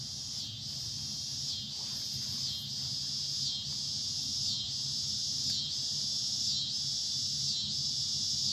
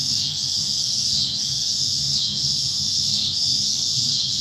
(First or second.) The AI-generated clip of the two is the second